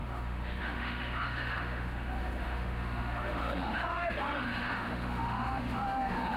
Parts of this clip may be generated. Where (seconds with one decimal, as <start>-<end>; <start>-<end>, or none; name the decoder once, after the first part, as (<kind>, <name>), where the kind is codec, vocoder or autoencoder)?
0.0-6.4 (autoencoder, DAC-VAE)